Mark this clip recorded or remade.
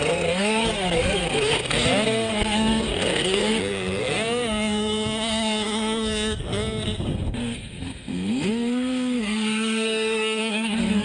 remade